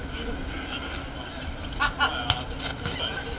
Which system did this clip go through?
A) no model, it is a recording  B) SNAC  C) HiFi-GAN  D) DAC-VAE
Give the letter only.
A